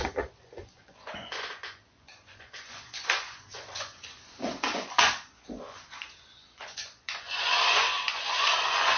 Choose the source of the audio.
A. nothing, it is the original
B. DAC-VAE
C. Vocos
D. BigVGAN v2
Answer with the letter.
C